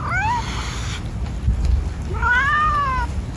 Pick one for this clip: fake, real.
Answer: real